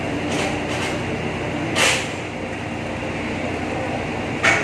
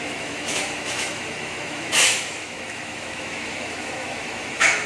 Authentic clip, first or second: first